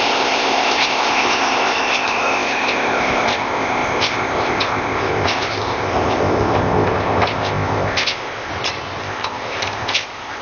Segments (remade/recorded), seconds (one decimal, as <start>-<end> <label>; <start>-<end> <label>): 0.0-8.5 remade; 8.5-9.0 recorded; 9.0-10.4 remade